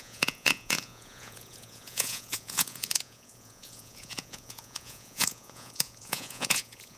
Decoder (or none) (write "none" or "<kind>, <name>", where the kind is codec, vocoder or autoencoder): vocoder, Vocos